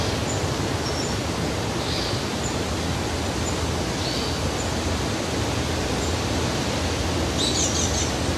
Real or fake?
real